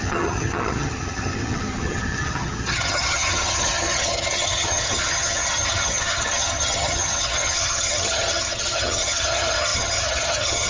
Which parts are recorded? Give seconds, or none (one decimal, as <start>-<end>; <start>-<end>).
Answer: none